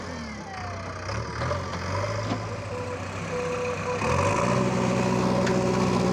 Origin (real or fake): real